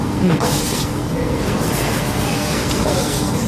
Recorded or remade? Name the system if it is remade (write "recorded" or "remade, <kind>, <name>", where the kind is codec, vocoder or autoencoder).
remade, codec, SNAC